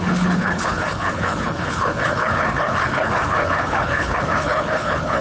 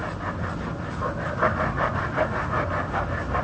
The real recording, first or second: second